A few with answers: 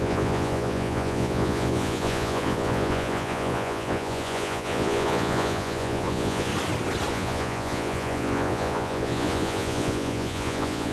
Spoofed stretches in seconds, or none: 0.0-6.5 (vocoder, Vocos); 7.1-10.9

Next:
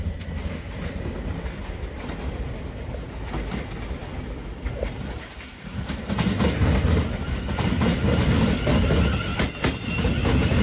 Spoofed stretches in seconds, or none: none

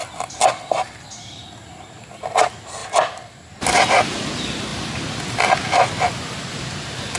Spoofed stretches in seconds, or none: none

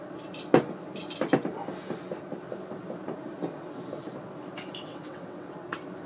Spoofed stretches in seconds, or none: 4.8-5.5 (vocoder, WaveNeXt)

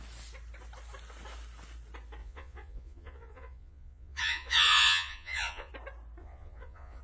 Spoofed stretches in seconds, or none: 2.2-5.7 (vocoder, Vocos); 6.2-7.0